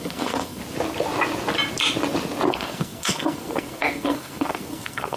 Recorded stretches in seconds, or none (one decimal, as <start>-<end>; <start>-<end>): 0.6-2.5